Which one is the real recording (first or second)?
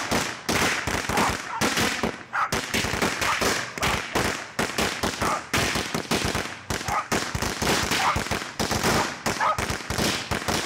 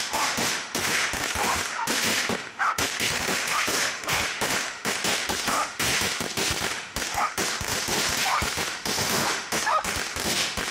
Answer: first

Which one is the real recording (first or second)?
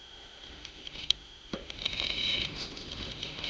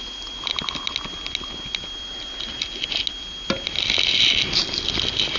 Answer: second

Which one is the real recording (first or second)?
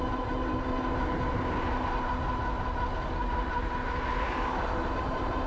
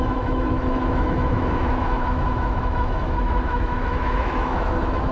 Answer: first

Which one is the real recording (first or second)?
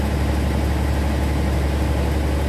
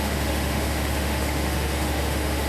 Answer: first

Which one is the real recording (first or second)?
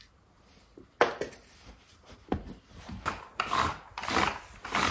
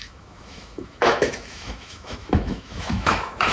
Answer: first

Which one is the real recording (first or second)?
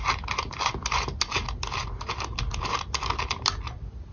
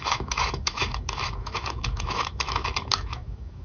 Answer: first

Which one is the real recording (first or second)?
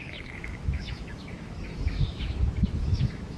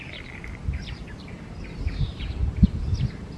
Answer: second